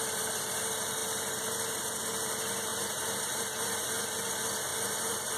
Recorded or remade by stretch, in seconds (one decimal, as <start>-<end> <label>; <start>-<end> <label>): 0.0-5.4 recorded